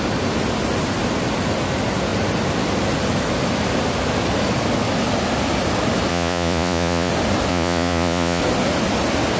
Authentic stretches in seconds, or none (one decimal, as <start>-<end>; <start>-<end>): 0.0-6.1; 7.1-7.5; 8.4-9.4